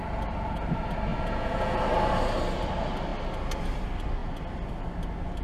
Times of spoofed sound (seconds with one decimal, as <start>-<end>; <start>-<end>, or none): 1.1-1.8